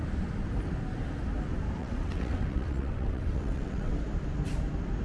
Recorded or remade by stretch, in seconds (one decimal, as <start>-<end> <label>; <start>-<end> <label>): 0.0-1.8 recorded; 1.8-3.9 remade; 3.9-5.0 recorded